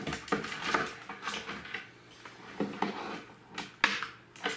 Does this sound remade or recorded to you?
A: recorded